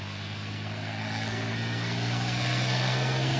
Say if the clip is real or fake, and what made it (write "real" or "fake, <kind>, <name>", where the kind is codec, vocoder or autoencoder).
fake, codec, SNAC